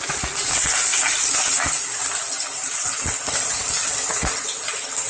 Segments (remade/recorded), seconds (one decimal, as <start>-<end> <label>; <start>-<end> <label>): 0.0-5.1 recorded